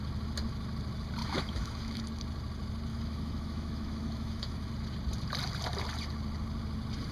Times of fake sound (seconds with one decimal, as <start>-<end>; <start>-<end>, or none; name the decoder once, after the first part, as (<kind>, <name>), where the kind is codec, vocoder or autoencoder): 1.2-2.0 (autoencoder, DAC-VAE); 2.9-4.7